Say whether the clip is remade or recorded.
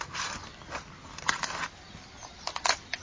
recorded